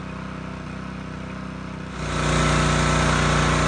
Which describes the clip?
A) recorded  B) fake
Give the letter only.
A